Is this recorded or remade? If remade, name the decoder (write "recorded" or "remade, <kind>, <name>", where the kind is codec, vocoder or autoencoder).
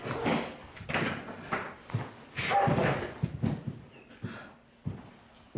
recorded